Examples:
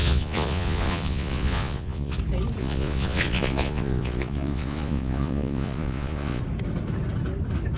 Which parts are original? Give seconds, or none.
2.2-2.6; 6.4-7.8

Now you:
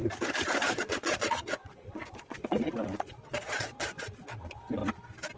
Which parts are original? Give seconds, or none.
0.0-0.6; 4.8-5.4

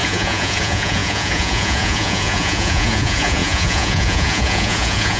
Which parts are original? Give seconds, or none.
none